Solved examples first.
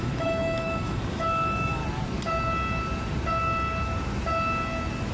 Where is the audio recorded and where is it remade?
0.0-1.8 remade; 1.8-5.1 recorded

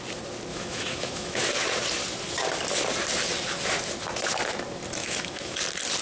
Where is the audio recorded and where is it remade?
0.0-0.5 recorded; 0.5-1.5 remade; 1.5-5.0 recorded; 5.0-5.6 remade; 5.6-6.0 recorded